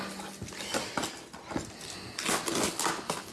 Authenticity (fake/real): real